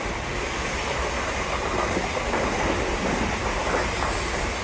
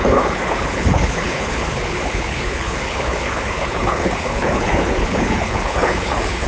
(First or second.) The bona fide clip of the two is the first